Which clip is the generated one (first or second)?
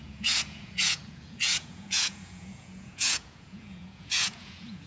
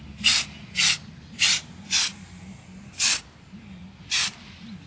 first